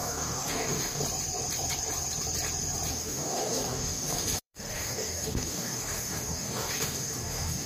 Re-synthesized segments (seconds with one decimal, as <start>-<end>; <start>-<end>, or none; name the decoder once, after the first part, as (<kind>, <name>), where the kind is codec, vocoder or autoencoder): 0.0-1.0 (codec, DAC); 2.9-7.7

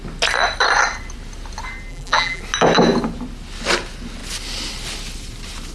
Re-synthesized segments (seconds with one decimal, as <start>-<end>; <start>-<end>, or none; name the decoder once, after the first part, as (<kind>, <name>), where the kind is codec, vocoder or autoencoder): 1.9-2.4 (vocoder, BigVGAN v2)

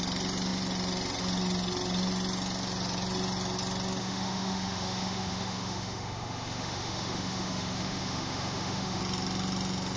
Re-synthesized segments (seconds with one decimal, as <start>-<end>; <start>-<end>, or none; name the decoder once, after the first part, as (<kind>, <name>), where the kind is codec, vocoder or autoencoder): 4.0-9.0 (autoencoder, DAC-VAE)

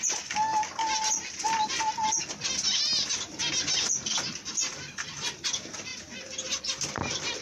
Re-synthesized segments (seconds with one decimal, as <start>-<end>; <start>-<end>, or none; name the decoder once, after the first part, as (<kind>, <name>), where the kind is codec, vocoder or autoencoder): none

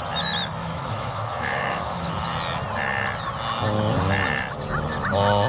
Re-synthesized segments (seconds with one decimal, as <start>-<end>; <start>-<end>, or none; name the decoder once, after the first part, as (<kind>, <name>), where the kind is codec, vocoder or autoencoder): 0.6-2.1 (autoencoder, DAC-VAE)

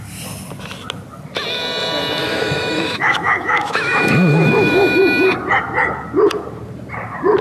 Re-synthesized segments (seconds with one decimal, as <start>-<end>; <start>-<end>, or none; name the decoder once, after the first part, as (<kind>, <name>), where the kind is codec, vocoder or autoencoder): 2.2-5.0 (autoencoder, DAC-VAE)